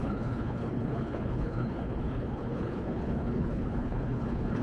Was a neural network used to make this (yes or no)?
yes